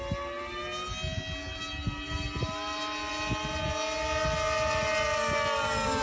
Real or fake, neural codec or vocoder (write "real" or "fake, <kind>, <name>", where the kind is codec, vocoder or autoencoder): real